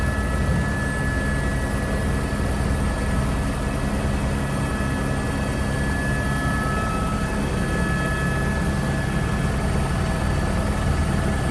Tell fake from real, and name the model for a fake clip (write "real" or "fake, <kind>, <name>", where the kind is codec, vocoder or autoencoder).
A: real